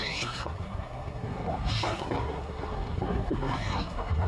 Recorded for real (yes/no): no